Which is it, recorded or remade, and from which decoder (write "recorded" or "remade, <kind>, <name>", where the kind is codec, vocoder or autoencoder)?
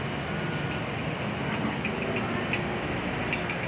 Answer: recorded